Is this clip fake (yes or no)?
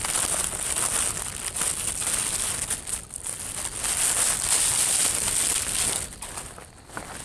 no